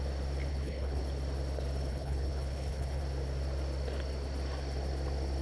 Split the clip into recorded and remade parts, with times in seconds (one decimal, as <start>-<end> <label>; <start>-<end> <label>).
0.0-0.5 recorded; 0.5-1.0 remade; 1.0-1.9 recorded; 1.9-3.0 remade; 3.0-5.4 recorded